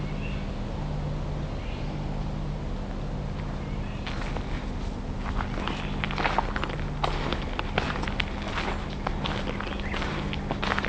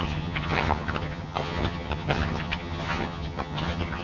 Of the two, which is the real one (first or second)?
first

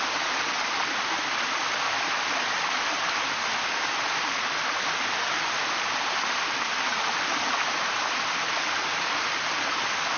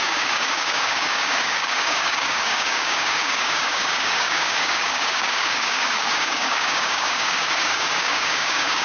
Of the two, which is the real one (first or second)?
first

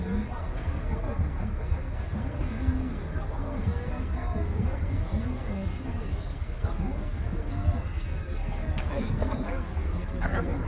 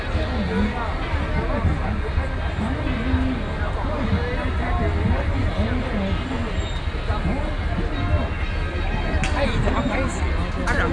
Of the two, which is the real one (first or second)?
second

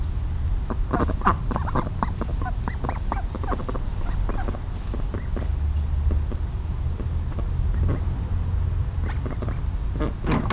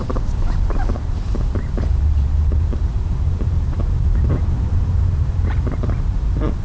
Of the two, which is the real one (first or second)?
first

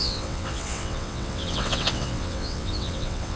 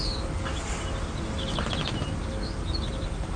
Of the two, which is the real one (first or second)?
second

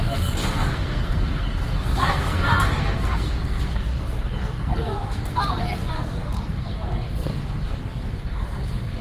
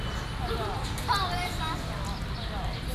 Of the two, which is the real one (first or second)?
second